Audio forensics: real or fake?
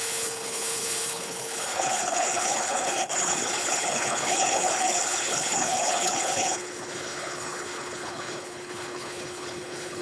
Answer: fake